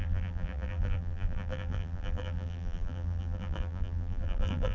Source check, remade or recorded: remade